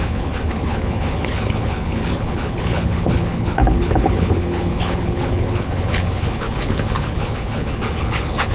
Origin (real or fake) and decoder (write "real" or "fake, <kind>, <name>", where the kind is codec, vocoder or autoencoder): fake, codec, HILCodec